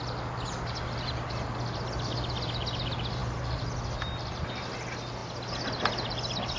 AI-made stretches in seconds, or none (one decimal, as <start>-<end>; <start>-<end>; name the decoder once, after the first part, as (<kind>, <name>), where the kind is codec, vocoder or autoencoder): none

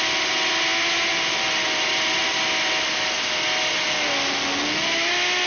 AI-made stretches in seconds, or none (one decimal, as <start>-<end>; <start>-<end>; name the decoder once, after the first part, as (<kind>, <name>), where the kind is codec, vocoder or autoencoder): none

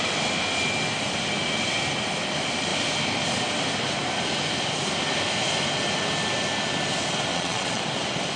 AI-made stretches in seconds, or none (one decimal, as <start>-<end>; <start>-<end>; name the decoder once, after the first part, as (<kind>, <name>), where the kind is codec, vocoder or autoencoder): 7.3-7.8 (vocoder, Vocos)

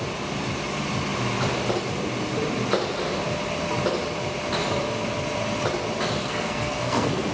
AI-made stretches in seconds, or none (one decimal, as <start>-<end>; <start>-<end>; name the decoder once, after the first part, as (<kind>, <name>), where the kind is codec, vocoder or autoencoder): 6.2-7.3 (codec, SNAC)

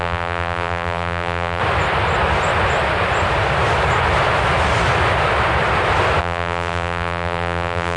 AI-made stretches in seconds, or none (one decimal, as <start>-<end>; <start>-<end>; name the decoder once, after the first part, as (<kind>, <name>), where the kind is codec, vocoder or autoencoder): 0.0-1.6 (vocoder, BigVGAN v2); 6.2-8.0

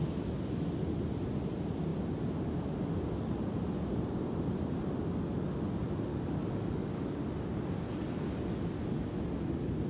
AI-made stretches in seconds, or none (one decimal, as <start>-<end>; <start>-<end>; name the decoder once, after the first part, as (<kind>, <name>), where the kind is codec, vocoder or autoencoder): 6.1-7.0 (codec, DAC)